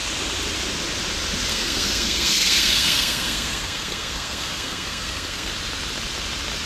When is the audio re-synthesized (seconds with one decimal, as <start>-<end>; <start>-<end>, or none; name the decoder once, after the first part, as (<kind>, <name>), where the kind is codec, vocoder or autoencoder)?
1.5-5.5 (codec, SNAC)